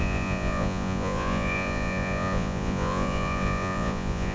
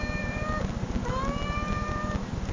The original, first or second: second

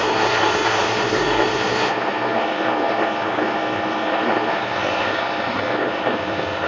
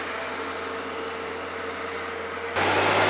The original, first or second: second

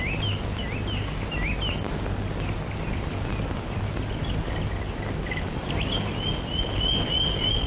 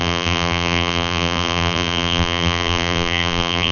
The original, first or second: first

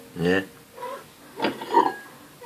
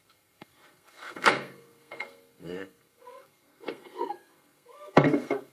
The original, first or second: first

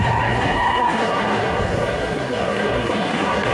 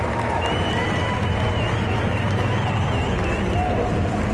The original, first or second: second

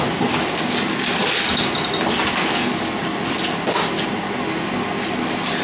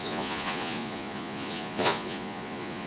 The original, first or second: first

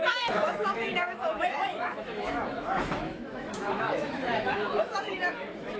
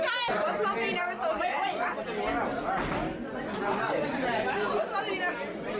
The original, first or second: second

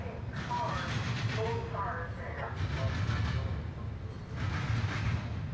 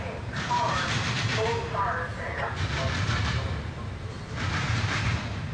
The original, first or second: first